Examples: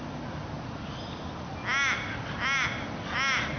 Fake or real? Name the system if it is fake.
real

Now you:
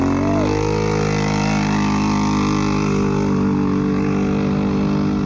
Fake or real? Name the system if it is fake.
real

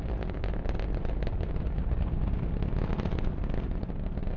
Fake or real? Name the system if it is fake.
real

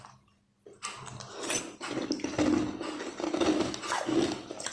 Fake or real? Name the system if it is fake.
real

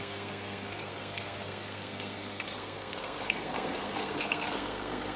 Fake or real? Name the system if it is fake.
fake, codec, SNAC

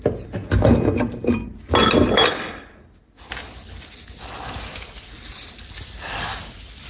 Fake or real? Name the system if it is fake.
real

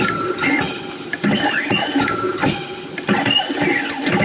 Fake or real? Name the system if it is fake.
real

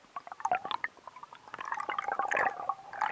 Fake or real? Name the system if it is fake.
real